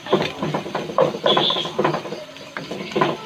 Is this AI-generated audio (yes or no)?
no